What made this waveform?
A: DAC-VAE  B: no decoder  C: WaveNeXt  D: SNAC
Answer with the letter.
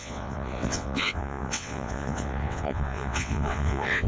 C